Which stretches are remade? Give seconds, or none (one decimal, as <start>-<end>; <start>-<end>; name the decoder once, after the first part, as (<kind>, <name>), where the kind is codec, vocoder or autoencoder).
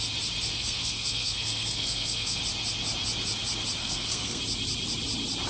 0.5-2.4 (codec, SNAC); 3.8-4.4